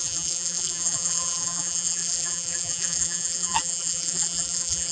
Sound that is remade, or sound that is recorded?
remade